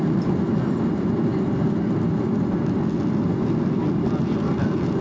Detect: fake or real real